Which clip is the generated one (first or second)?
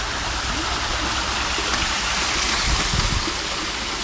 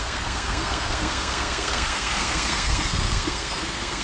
second